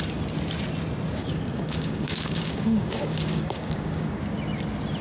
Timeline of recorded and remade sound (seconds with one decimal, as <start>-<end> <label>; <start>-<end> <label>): 0.0-1.2 recorded; 1.2-4.2 remade; 4.2-5.0 recorded